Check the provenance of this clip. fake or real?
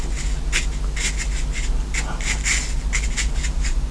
real